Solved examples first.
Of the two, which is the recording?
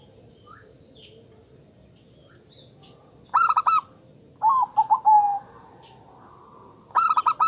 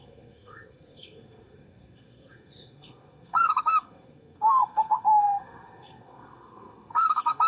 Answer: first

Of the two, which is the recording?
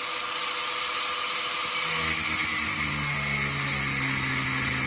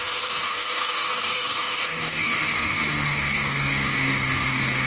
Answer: first